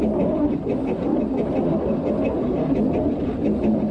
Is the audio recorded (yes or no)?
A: yes